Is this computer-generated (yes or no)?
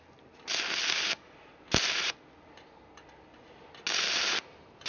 no